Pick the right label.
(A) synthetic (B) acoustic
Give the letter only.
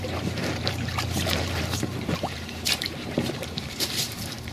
A